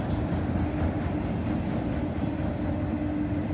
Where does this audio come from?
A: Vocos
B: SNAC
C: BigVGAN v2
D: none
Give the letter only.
D